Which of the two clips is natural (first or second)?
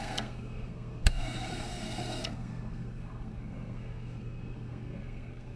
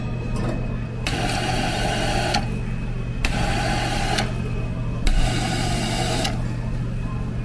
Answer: second